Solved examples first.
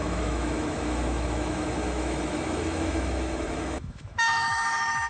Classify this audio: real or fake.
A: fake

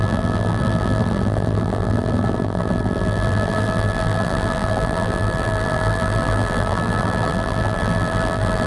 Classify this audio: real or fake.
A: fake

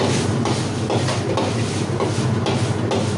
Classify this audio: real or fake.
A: real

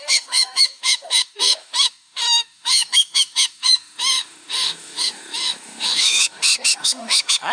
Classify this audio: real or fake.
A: fake